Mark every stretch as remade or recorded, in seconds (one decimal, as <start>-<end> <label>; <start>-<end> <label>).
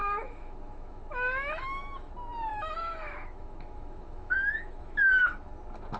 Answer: 0.0-2.1 remade; 2.1-2.5 recorded; 2.5-5.5 remade; 5.5-6.0 recorded